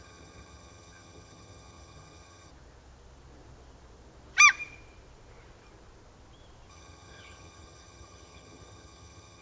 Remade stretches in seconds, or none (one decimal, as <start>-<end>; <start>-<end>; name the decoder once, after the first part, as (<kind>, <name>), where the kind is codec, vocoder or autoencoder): 0.0-2.5 (vocoder, HiFi-GAN); 6.7-9.4